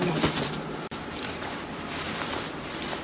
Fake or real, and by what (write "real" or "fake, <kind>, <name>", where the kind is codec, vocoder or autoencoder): real